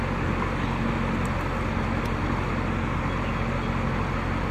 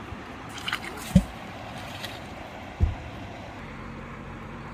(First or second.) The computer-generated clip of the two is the second